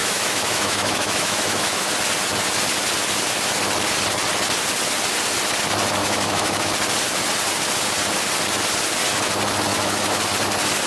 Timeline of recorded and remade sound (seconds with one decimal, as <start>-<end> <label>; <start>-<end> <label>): 0.0-1.9 remade; 1.9-6.0 recorded; 6.0-6.7 remade; 6.7-9.7 recorded; 9.7-10.2 remade; 10.2-10.9 recorded